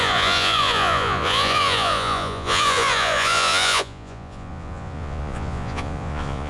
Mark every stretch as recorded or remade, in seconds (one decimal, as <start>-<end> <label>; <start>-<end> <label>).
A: 0.0-6.5 remade